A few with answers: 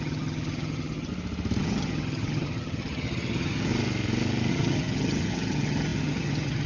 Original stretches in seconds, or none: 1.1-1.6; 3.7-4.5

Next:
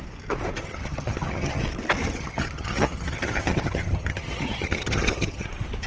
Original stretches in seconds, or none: 0.0-0.6; 1.6-2.0; 5.5-5.9

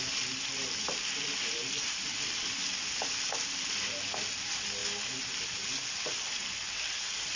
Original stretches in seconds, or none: 0.0-7.4

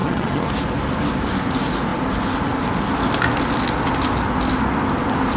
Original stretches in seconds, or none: 0.5-5.4

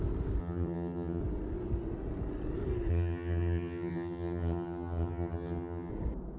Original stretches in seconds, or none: 0.0-0.4; 1.2-2.9; 5.9-6.4

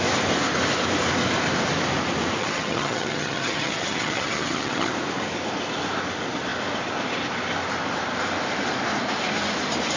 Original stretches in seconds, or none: 0.0-2.4; 4.9-10.0

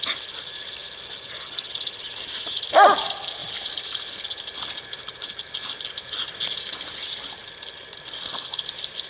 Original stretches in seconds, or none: 0.0-9.1